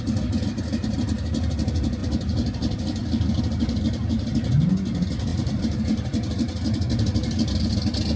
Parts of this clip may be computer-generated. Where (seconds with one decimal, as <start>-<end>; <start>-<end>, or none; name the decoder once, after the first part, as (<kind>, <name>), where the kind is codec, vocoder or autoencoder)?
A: 2.0-3.4 (vocoder, BigVGAN v2); 5.3-7.7